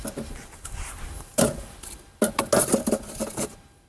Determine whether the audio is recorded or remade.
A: recorded